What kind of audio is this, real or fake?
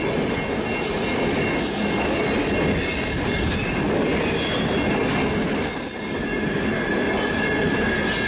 real